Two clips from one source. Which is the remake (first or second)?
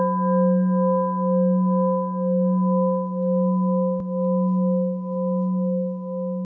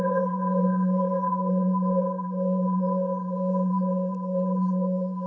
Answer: second